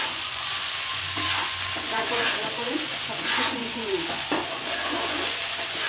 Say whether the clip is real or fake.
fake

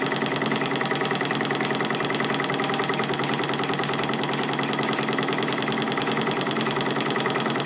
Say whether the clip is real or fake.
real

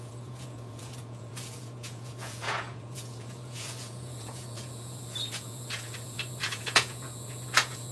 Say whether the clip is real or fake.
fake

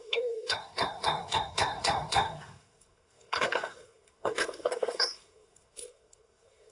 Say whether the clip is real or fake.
fake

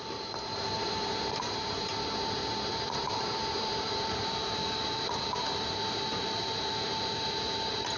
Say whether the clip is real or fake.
fake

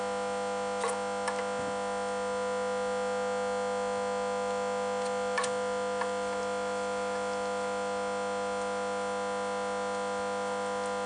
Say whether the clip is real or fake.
real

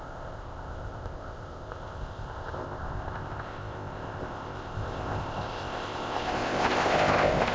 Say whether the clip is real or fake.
fake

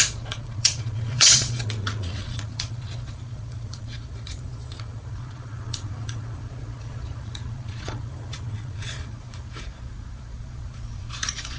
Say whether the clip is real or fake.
fake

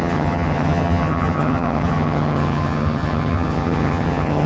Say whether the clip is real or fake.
fake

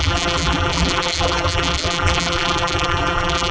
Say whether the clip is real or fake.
fake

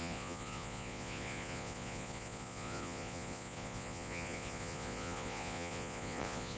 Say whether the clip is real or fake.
fake